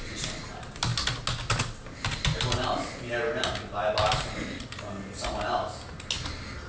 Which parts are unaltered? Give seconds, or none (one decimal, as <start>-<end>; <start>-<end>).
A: 0.0-6.7